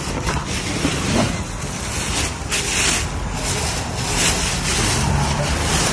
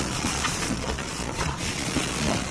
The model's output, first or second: second